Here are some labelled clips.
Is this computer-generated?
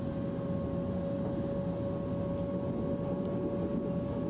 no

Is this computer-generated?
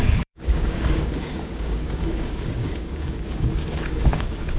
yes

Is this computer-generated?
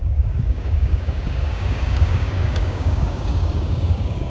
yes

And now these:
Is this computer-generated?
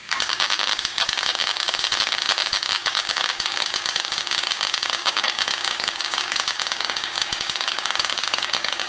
yes